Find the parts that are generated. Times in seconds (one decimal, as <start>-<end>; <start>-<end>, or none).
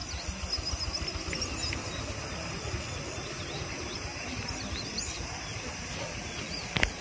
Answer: none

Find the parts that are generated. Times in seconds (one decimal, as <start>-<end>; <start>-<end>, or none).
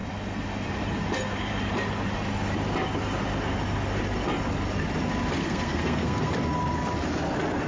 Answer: 5.4-6.3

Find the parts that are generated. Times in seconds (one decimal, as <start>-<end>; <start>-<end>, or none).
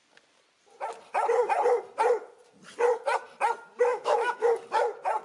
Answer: 3.9-4.5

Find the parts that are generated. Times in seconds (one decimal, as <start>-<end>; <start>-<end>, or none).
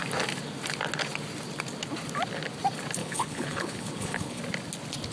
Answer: 3.0-4.4